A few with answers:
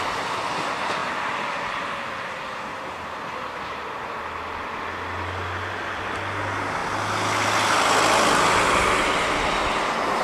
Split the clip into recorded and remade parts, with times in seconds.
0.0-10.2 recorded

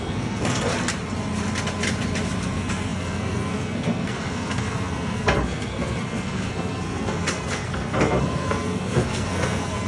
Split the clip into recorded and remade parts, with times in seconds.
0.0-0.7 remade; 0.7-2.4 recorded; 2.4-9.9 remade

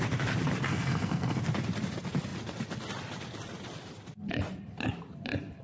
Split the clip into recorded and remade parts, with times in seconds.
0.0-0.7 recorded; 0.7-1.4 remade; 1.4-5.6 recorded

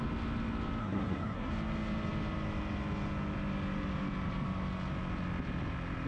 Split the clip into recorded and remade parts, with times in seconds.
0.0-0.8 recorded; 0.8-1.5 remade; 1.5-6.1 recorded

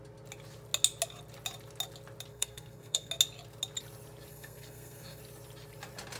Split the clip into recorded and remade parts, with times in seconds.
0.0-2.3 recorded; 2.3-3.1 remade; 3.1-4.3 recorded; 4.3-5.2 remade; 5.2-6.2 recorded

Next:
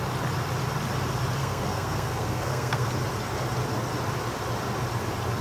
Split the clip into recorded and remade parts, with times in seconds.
0.0-1.4 recorded; 1.4-2.9 remade; 2.9-5.4 recorded